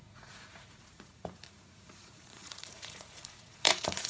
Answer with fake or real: fake